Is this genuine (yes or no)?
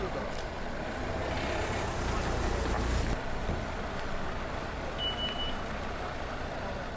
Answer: yes